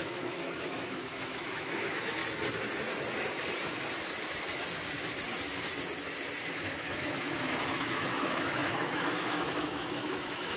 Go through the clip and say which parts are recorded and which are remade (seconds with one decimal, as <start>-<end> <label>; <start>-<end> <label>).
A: 0.0-2.2 remade; 2.2-6.4 recorded; 6.4-10.6 remade